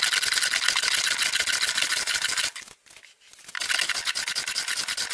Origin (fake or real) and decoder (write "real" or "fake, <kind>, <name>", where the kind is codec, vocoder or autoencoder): real